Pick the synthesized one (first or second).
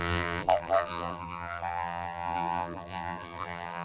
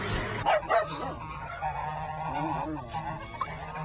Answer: first